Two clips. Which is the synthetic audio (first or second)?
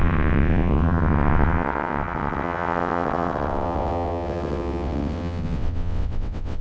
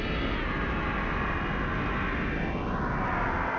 first